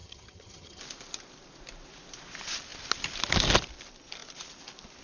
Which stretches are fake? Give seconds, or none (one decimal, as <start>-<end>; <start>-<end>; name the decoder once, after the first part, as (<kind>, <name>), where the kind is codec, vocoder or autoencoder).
0.0-0.8 (vocoder, HiFi-GAN)